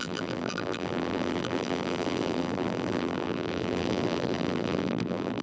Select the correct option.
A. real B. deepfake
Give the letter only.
B